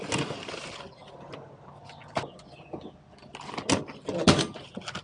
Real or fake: real